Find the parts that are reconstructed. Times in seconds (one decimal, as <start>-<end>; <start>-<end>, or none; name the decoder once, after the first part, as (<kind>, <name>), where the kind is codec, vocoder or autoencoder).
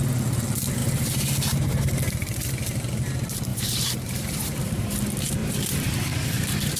0.8-1.8 (vocoder, BigVGAN v2); 3.5-4.9; 5.4-6.8